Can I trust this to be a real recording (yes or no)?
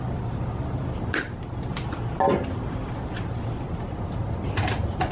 yes